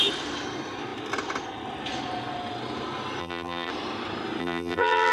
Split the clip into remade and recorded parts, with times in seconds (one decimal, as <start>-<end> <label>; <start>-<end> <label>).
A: 0.0-3.2 recorded; 3.2-3.7 remade; 3.7-4.4 recorded; 4.4-5.1 remade